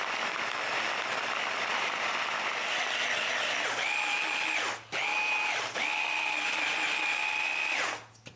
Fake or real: real